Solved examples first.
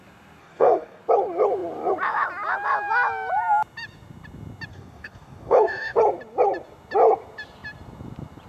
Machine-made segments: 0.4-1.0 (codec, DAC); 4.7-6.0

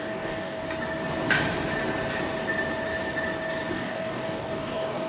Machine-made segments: 0.0-0.6 (codec, DAC); 3.7-5.1

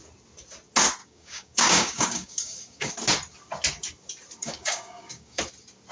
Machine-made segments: 1.0-2.9 (codec, DAC); 4.4-5.4